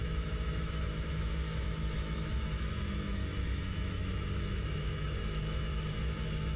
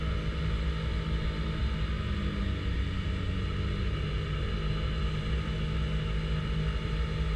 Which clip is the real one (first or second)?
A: second